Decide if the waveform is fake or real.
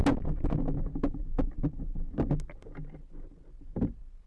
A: real